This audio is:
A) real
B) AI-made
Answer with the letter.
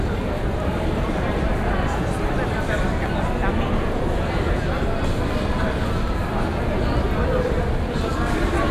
A